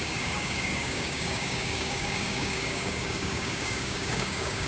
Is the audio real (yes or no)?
no